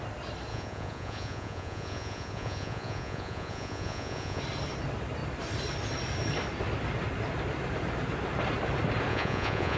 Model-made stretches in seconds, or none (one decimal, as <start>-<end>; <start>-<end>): 0.5-4.4; 9.1-9.8